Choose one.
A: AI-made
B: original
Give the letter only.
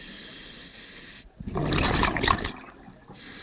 B